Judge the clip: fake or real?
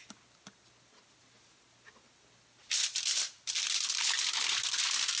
real